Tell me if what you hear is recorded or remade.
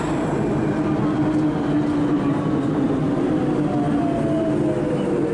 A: recorded